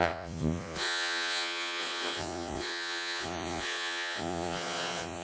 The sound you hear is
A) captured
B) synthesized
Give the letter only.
B